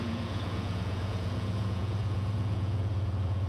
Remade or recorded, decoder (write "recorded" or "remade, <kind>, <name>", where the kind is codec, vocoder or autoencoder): remade, vocoder, Vocos